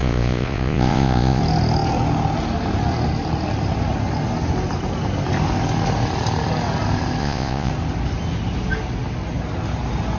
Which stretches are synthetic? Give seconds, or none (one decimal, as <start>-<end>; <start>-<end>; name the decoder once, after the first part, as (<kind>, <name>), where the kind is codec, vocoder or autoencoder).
0.0-1.4 (vocoder, Vocos); 7.2-7.7